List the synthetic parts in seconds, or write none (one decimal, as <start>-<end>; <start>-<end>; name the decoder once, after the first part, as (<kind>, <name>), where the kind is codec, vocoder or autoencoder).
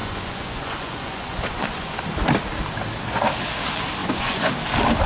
0.0-2.0 (vocoder, Vocos); 4.0-4.5